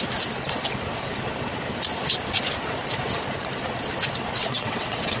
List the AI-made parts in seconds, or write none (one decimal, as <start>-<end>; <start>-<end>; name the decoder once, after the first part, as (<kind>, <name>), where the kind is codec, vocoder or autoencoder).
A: 4.4-5.2 (vocoder, WaveNeXt)